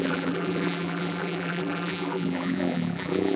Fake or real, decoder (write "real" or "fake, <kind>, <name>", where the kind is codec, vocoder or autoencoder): fake, vocoder, BigVGAN v2